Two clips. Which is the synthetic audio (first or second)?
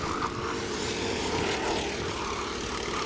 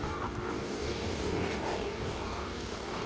second